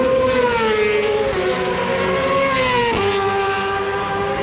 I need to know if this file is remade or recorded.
recorded